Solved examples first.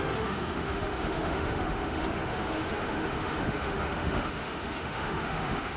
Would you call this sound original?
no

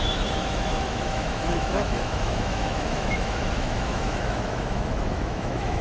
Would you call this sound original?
no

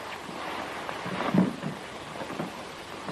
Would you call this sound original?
yes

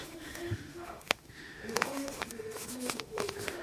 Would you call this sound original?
no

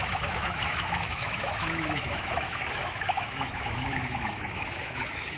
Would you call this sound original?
no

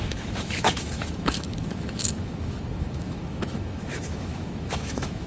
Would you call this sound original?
no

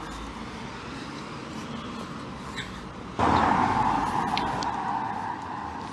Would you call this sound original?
yes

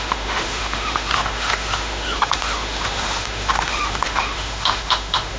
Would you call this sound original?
no